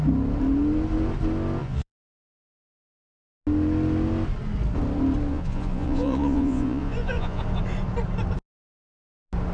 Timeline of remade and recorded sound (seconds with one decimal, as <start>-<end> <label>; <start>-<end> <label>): 0.0-1.6 recorded; 1.6-2.6 remade; 2.6-5.3 recorded; 5.3-7.4 remade; 7.4-9.5 recorded